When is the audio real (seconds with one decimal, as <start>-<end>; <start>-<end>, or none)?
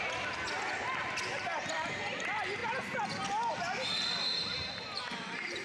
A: 0.0-5.6